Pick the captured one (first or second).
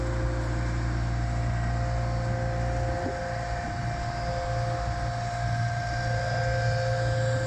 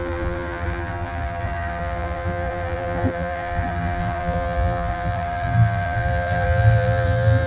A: first